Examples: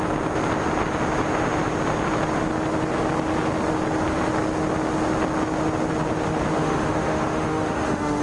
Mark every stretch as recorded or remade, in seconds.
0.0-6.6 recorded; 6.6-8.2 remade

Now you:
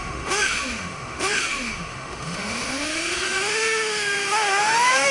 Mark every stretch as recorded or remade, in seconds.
0.0-5.1 remade

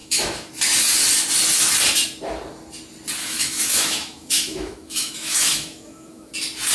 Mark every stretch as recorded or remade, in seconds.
0.0-0.5 remade; 0.5-3.2 recorded; 3.2-6.3 remade; 6.3-6.7 recorded

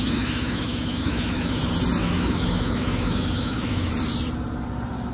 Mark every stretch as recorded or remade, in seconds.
0.0-1.6 remade; 1.6-2.0 recorded; 2.0-3.9 remade; 3.9-5.1 recorded

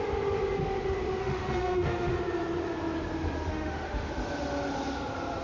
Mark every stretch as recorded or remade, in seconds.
0.0-1.2 recorded; 1.2-2.1 remade; 2.1-3.5 recorded; 3.5-4.1 remade; 4.1-5.4 recorded

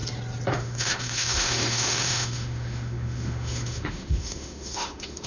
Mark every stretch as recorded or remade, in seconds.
0.0-0.5 recorded; 0.5-5.3 remade

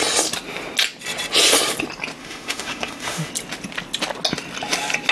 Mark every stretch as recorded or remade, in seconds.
0.0-2.2 recorded; 2.2-3.3 remade; 3.3-5.1 recorded